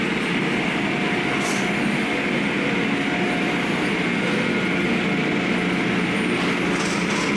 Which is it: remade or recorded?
recorded